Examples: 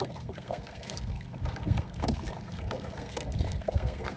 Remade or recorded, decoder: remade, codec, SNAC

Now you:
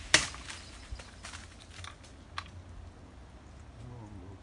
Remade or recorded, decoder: recorded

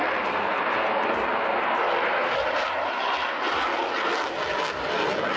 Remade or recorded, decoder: recorded